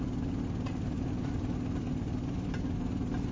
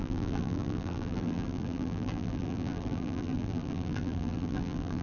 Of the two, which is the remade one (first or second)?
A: second